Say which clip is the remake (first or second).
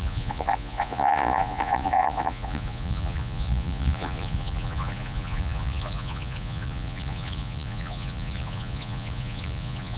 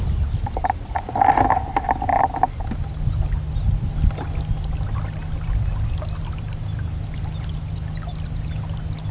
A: first